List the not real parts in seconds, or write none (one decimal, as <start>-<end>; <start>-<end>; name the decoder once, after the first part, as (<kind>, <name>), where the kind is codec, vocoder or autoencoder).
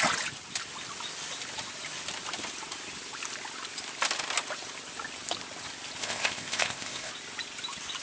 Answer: 6.0-7.1 (codec, ZipCodec)